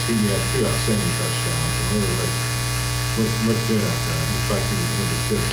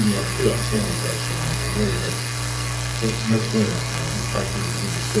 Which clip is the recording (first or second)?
first